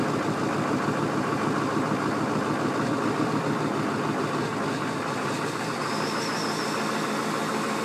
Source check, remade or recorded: recorded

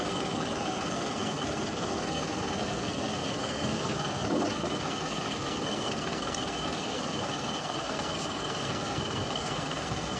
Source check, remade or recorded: remade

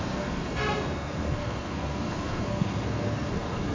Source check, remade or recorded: remade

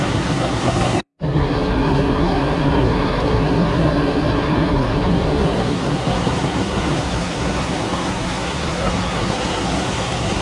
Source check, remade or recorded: remade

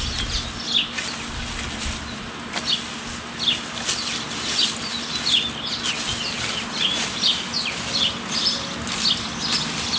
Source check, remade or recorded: recorded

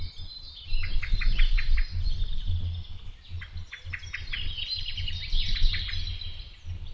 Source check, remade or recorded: recorded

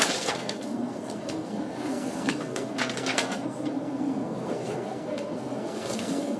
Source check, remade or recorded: remade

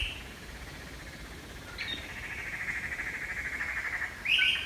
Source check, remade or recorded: recorded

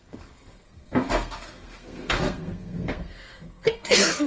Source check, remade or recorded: remade